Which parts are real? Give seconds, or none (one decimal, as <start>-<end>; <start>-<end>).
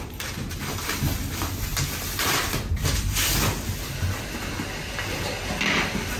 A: 0.0-6.2